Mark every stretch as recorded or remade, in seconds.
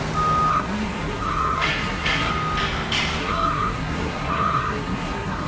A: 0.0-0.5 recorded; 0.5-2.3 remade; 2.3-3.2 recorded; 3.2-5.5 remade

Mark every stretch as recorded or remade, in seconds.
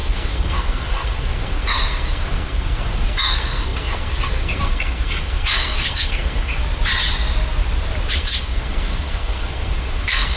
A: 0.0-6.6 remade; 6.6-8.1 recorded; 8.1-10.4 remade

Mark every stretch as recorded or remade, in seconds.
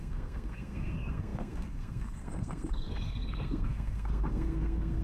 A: 0.0-5.0 remade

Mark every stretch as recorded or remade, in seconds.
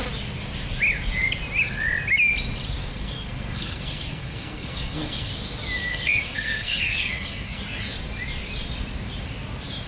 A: 0.0-2.8 recorded; 2.8-5.3 remade; 5.3-5.9 recorded; 5.9-7.6 remade; 7.6-9.9 recorded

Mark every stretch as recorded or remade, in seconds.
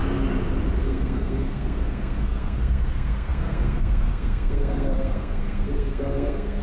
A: 0.0-0.8 recorded; 0.8-6.6 remade